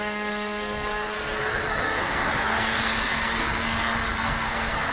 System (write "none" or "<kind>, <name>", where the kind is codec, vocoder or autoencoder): codec, SNAC